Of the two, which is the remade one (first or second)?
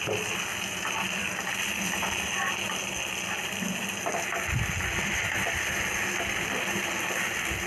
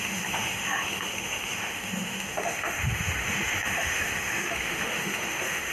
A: second